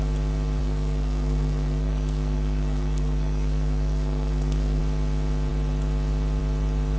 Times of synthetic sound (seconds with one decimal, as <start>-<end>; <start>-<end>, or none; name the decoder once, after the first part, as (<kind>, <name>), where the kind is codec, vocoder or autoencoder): 0.6-4.8 (codec, SNAC)